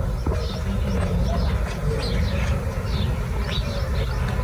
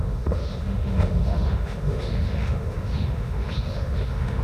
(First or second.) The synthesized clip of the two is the second